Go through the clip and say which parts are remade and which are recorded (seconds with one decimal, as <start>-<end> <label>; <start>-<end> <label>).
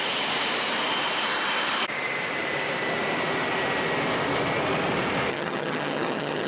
0.0-5.3 recorded; 5.3-6.5 remade